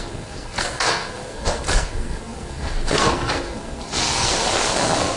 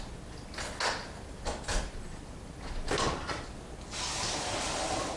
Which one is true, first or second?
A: second